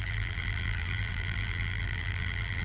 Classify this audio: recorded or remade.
remade